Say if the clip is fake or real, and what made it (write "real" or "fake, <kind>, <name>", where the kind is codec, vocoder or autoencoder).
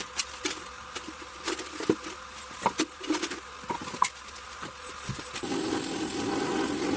real